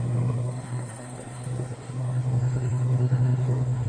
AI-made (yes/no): yes